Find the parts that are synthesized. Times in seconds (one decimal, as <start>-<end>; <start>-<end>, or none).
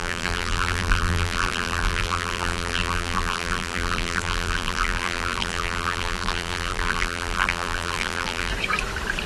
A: 0.0-8.5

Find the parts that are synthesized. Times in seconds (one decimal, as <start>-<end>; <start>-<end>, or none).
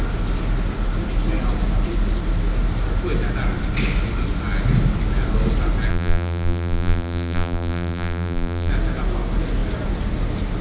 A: 5.9-8.7